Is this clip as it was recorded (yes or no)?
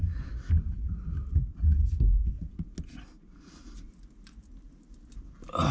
yes